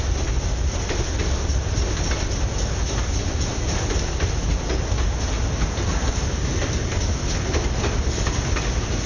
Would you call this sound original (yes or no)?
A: yes